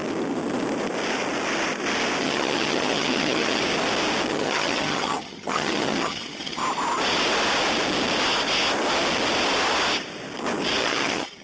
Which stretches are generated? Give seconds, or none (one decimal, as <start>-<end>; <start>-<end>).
2.2-3.6; 4.3-6.6; 10.8-11.4